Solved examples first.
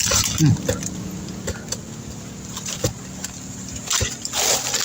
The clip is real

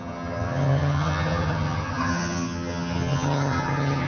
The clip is fake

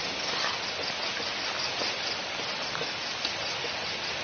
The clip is real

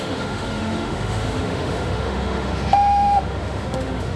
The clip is fake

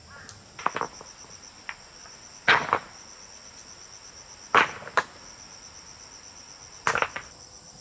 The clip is real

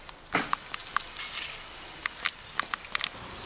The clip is real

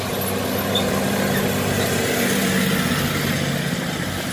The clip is real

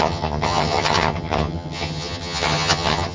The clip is fake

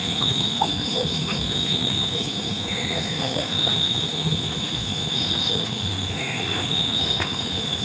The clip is fake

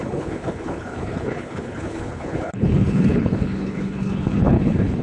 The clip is fake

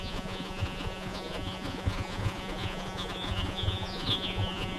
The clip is fake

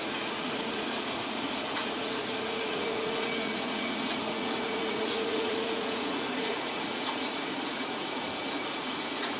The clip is fake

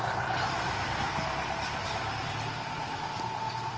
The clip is fake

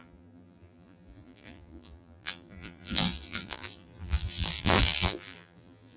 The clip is fake